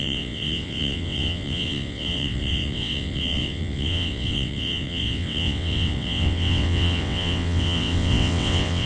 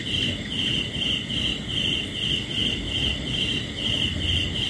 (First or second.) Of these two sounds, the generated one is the first